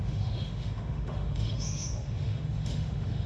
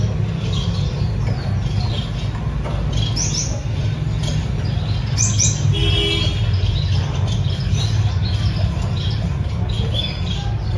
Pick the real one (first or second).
second